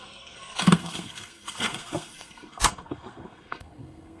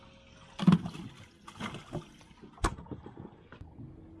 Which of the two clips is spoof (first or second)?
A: first